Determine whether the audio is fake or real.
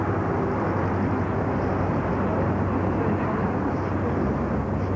real